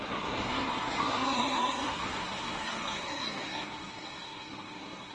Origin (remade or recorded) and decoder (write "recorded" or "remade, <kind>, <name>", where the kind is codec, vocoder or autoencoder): remade, codec, SNAC